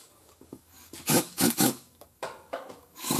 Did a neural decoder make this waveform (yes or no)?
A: yes